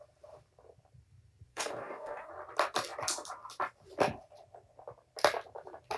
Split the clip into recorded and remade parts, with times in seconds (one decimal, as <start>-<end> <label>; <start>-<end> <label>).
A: 0.0-1.5 recorded; 1.5-2.3 remade; 2.3-6.0 recorded